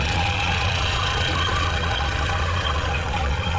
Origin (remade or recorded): remade